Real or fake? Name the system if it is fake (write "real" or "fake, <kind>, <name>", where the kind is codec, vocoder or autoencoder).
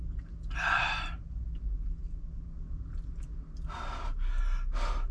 real